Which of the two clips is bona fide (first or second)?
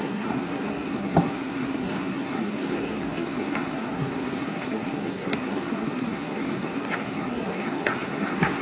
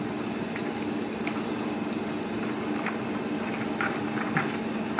second